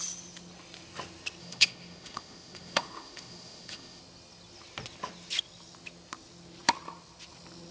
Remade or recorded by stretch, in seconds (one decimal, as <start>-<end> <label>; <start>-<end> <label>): 0.0-1.4 recorded; 1.4-4.0 remade; 4.0-7.7 recorded

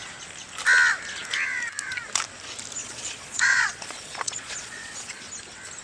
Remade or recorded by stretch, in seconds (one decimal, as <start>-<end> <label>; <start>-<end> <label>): 0.0-2.8 recorded; 2.8-5.3 remade; 5.3-5.8 recorded

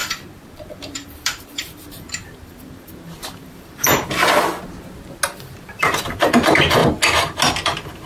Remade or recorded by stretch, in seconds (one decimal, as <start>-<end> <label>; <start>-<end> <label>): 0.0-3.9 remade; 3.9-5.4 recorded; 5.4-6.8 remade; 6.8-7.5 recorded; 7.5-8.1 remade

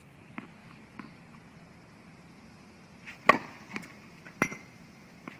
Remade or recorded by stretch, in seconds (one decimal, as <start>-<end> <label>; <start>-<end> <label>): 0.0-0.6 recorded; 0.6-1.4 remade; 1.4-2.1 recorded; 2.1-3.1 remade; 3.1-3.9 recorded; 3.9-5.4 remade

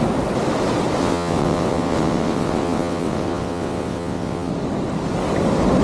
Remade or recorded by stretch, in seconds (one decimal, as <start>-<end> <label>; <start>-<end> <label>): 0.0-1.0 recorded; 1.0-4.5 remade; 4.5-5.8 recorded